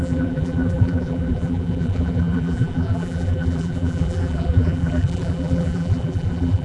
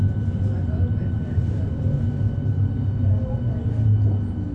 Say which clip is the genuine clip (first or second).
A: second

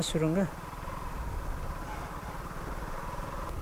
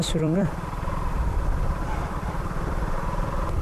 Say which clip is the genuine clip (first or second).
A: first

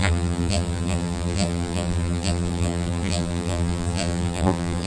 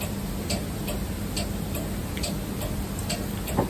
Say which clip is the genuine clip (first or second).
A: second